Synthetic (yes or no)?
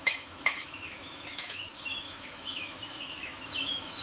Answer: yes